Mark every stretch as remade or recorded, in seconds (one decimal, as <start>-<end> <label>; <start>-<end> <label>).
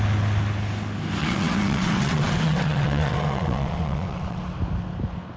0.0-1.2 recorded; 1.2-4.4 remade; 4.4-5.4 recorded